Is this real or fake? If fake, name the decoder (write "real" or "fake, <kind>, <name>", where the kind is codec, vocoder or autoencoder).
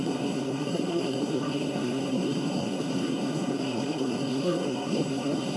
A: fake, codec, SNAC